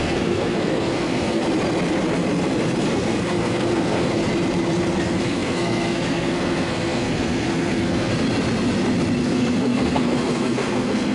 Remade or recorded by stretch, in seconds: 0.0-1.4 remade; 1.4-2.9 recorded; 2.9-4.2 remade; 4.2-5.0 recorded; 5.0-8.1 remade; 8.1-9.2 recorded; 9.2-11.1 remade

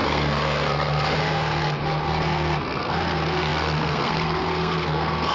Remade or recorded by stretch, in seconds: 0.0-5.3 remade

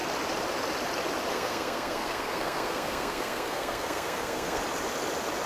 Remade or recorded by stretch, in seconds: 0.0-1.3 recorded; 1.3-4.6 remade; 4.6-5.5 recorded